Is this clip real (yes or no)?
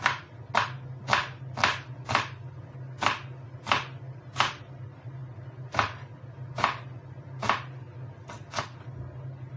yes